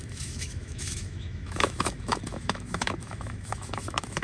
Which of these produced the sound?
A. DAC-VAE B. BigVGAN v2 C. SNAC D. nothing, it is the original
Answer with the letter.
A